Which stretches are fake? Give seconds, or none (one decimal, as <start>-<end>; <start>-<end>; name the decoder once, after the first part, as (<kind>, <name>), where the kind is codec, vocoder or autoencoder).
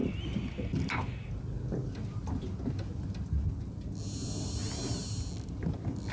none